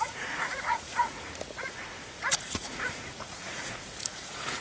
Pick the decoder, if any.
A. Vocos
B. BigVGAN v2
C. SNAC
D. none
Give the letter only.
A